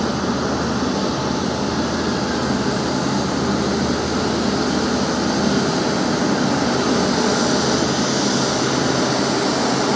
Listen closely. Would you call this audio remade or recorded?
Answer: recorded